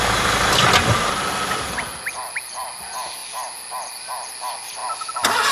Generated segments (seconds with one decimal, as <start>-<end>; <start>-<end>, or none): none